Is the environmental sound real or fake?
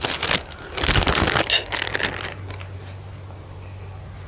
real